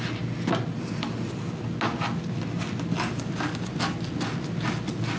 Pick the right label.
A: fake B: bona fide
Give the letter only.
B